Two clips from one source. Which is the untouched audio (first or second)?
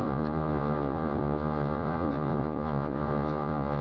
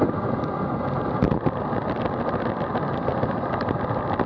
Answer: second